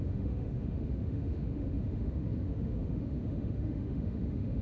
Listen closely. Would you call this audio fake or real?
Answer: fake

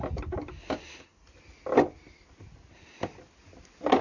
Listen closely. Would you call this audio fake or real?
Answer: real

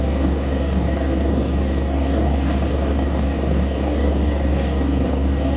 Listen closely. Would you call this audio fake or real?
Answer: fake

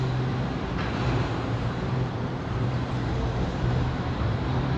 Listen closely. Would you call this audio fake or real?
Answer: fake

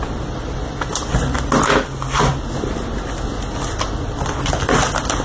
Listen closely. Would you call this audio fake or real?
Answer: real